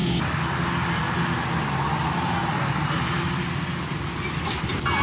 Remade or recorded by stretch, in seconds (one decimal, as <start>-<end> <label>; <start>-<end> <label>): 0.0-2.4 recorded; 2.4-3.1 remade; 3.1-5.0 recorded